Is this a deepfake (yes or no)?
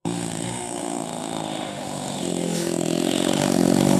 yes